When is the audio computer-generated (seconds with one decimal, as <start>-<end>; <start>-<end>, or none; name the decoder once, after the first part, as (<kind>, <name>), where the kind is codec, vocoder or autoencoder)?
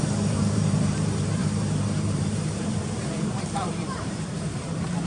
0.0-5.1 (vocoder, BigVGAN v2)